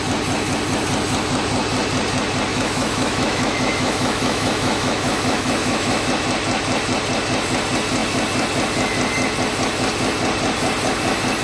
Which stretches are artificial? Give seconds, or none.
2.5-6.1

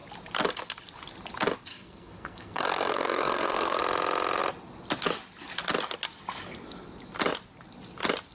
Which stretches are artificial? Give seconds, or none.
1.7-3.8

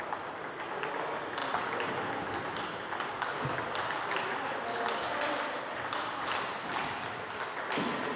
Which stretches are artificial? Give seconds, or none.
none

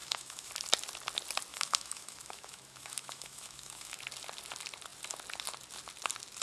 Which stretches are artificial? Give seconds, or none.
0.0-0.5; 1.5-4.0

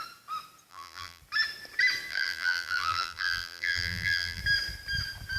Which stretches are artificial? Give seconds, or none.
0.7-1.2; 2.1-4.4

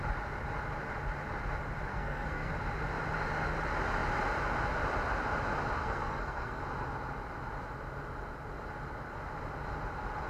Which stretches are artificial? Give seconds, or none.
1.9-2.5; 5.8-6.6

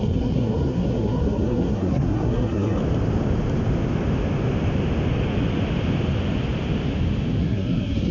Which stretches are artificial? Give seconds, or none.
0.0-2.8; 7.4-8.1